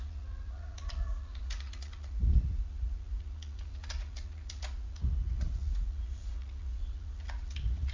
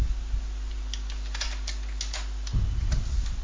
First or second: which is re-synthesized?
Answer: first